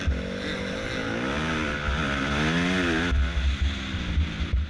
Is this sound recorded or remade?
recorded